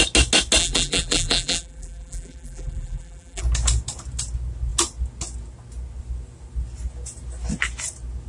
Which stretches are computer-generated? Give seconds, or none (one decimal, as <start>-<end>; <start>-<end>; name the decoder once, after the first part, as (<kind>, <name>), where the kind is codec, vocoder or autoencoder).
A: 0.6-3.4 (vocoder, BigVGAN v2)